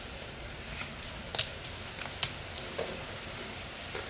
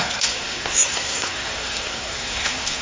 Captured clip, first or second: first